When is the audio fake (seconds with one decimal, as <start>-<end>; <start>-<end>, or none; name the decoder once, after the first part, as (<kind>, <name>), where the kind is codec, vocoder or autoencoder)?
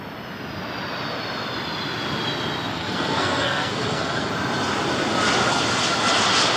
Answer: 2.7-4.3 (codec, SNAC)